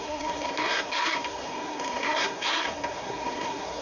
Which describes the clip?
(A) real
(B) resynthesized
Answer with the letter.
B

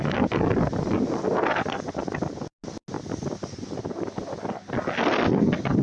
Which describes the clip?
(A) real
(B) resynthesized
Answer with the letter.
A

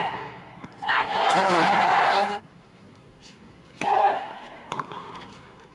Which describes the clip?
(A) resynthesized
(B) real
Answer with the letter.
A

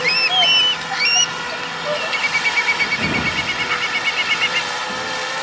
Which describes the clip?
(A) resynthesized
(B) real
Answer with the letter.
B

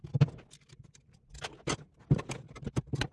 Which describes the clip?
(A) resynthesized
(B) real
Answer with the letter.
B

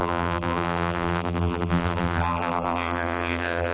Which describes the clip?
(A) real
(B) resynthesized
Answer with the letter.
B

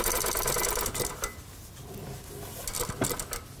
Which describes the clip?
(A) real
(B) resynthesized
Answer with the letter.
A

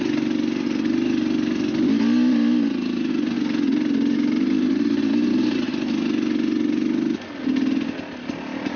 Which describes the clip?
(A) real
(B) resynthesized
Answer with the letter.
A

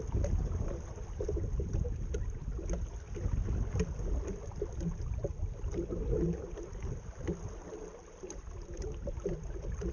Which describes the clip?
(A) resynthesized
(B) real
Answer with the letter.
B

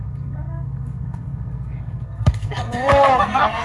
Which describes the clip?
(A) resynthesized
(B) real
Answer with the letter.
A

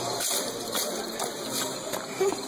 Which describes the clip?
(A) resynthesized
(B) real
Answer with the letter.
A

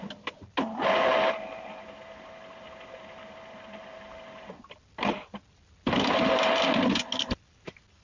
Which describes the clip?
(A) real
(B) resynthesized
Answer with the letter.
A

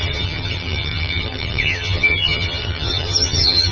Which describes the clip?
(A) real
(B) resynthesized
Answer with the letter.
B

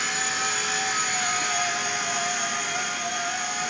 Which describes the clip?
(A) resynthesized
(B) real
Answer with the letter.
B